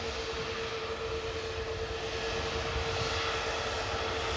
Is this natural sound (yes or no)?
yes